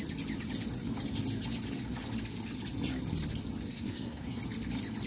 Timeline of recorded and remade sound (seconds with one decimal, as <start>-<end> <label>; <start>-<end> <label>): 0.0-3.7 recorded; 3.7-4.4 remade; 4.4-5.1 recorded